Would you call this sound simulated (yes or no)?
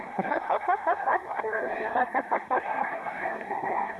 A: yes